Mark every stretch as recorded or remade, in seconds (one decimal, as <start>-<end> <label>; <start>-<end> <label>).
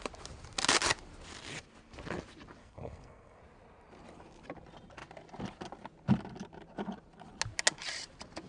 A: 0.0-2.6 recorded; 2.6-3.4 remade; 3.4-8.5 recorded